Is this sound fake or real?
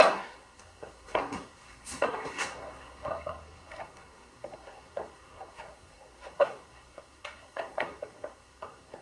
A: fake